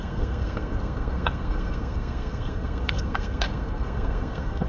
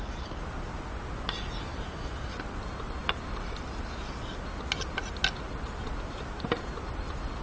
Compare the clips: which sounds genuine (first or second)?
second